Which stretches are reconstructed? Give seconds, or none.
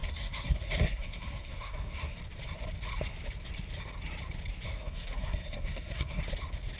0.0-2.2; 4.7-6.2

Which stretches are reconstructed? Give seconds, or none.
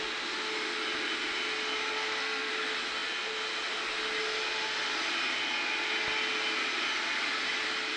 1.9-2.5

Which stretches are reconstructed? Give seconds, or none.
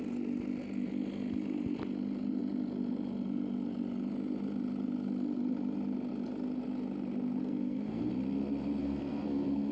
7.4-8.1; 8.8-9.7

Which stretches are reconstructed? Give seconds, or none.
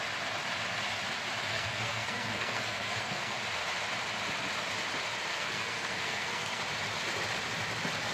1.5-3.4; 5.3-6.6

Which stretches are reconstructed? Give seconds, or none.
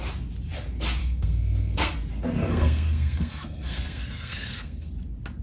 1.0-1.9; 2.4-4.9